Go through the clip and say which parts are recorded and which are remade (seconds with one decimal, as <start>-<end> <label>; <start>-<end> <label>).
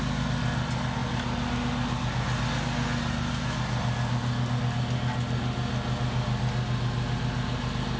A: 0.0-8.0 recorded